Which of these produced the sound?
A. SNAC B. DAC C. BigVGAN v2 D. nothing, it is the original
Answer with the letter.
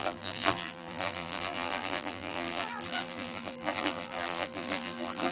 C